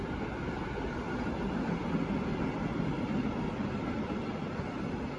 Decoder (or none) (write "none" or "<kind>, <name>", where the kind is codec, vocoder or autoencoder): none